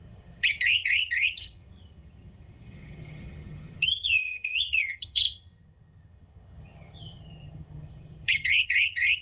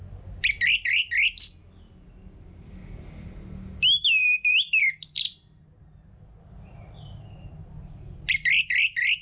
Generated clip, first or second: first